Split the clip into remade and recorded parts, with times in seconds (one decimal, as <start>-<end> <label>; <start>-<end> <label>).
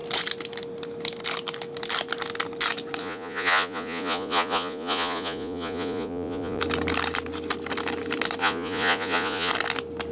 0.0-3.0 recorded; 3.0-6.6 remade; 6.6-8.4 recorded; 8.4-9.5 remade; 9.5-10.1 recorded